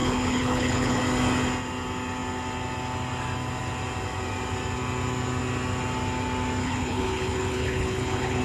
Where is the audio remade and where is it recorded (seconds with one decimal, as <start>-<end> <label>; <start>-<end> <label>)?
0.0-1.0 remade; 1.0-6.6 recorded; 6.6-8.4 remade